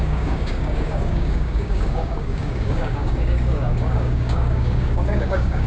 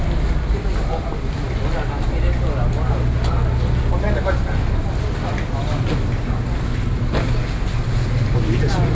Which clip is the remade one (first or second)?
first